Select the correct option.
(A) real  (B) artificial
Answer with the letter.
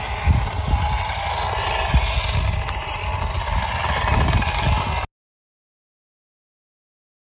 A